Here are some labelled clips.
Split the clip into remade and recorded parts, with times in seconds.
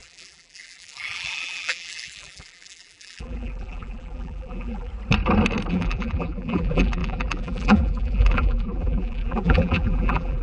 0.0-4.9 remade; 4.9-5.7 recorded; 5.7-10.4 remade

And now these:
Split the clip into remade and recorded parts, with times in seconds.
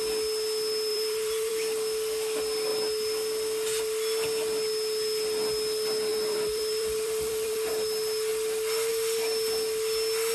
0.0-0.9 recorded; 0.9-1.5 remade; 1.5-6.1 recorded; 6.1-7.7 remade; 7.7-10.3 recorded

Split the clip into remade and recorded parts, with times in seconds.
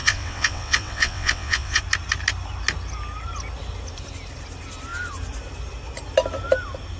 0.0-1.8 remade; 1.8-7.0 recorded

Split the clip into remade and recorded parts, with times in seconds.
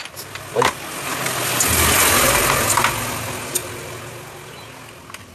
0.0-5.3 recorded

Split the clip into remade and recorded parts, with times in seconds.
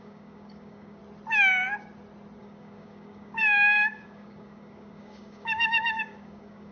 0.0-1.0 remade; 1.0-2.4 recorded; 2.4-6.7 remade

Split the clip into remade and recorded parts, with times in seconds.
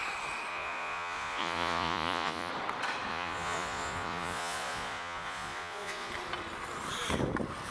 0.0-0.5 recorded; 0.5-2.5 remade; 2.5-3.1 recorded; 3.1-6.1 remade; 6.1-7.7 recorded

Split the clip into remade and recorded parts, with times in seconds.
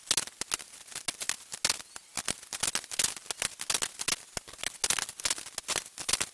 0.0-6.3 recorded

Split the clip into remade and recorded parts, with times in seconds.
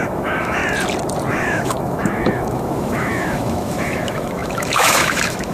0.0-0.6 remade; 0.6-1.3 recorded; 1.3-5.5 remade